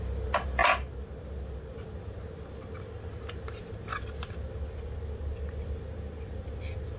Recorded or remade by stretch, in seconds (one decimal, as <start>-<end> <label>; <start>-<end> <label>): 0.0-7.0 recorded

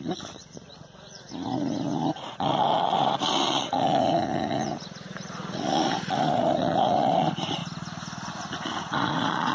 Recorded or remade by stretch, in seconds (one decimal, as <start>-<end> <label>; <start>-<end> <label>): 0.0-7.6 remade; 7.6-8.3 recorded; 8.3-9.5 remade

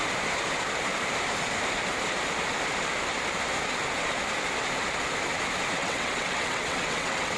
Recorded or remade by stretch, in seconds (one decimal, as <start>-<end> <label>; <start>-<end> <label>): 0.0-5.8 recorded; 5.8-7.4 remade

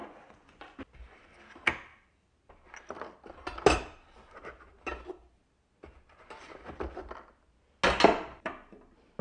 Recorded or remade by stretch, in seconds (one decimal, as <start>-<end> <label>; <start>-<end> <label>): 0.0-0.8 remade; 0.8-9.2 recorded

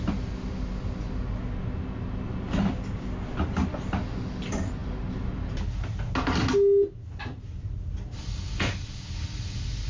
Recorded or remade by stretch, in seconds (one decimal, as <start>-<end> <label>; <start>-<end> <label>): 0.0-9.9 recorded

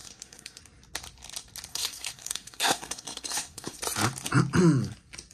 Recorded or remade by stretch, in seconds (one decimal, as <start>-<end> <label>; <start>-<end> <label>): 0.0-0.6 remade; 0.6-1.7 recorded; 1.7-3.8 remade; 3.8-5.3 recorded

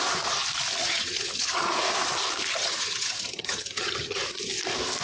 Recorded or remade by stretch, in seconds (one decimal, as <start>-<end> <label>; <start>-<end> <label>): 0.0-0.8 recorded; 0.8-1.8 remade; 1.8-2.5 recorded; 2.5-4.2 remade; 4.2-5.0 recorded